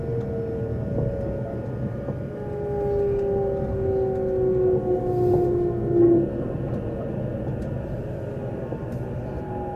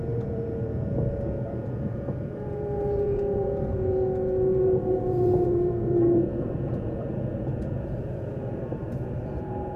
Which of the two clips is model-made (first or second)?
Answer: second